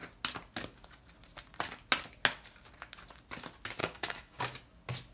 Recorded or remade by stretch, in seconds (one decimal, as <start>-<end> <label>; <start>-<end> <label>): 0.0-3.8 recorded; 3.8-4.4 remade; 4.4-5.1 recorded